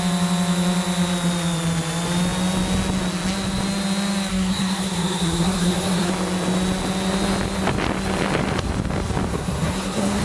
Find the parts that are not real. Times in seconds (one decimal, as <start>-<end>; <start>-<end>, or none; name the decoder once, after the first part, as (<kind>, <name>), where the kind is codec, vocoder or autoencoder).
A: 4.3-6.1 (codec, SNAC); 9.3-10.2